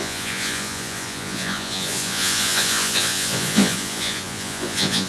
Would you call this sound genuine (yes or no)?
no